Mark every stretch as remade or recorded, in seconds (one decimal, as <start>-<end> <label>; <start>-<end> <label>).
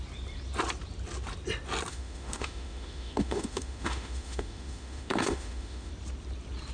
0.0-1.9 recorded; 1.9-5.9 remade; 5.9-6.7 recorded